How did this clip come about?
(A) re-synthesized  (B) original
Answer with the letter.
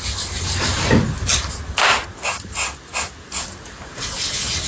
B